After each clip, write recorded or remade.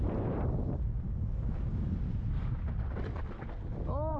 recorded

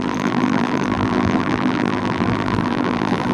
remade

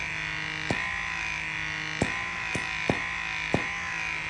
recorded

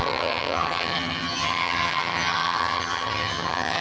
remade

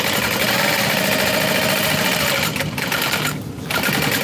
recorded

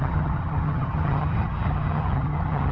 remade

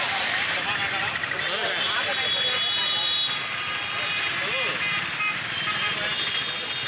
recorded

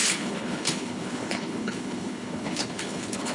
remade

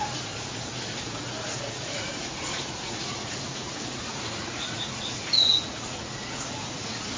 remade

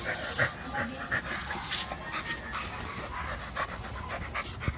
recorded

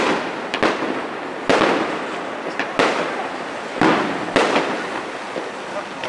recorded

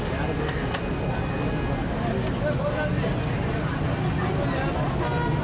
recorded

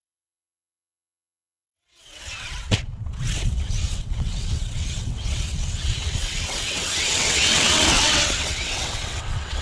remade